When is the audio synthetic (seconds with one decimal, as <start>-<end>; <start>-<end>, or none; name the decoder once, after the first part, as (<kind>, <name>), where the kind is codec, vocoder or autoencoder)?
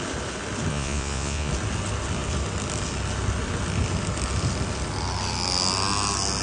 0.7-1.5 (vocoder, Vocos)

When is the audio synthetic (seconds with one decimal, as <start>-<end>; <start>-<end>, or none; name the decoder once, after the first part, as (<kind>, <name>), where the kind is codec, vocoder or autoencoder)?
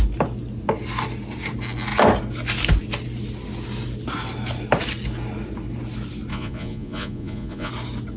6.3-7.7 (vocoder, Vocos)